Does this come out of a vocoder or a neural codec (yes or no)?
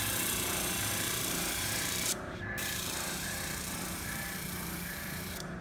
yes